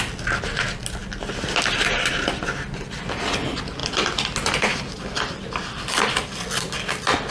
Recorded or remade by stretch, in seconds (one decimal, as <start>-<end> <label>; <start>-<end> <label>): 0.0-7.3 recorded